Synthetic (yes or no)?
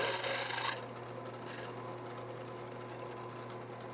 no